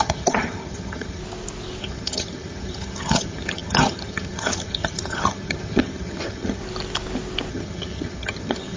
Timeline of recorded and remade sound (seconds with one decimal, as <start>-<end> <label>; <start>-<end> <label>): 0.0-1.2 remade; 1.2-1.8 recorded; 1.8-6.6 remade; 6.6-7.5 recorded; 7.5-8.8 remade